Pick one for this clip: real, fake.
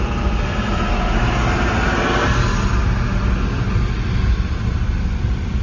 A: real